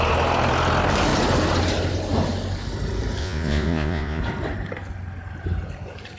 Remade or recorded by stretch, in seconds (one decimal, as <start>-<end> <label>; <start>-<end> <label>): 0.0-3.2 recorded; 3.2-4.2 remade; 4.2-6.2 recorded